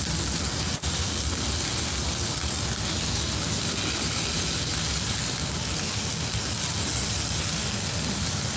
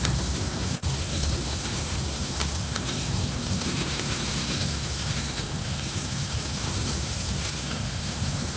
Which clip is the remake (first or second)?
second